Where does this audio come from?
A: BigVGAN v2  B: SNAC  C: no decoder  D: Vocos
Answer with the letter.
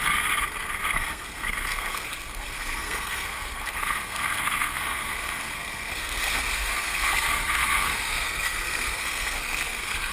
B